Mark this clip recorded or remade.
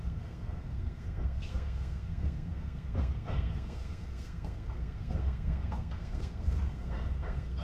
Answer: remade